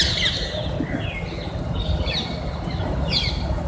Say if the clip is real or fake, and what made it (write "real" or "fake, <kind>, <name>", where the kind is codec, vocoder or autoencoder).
real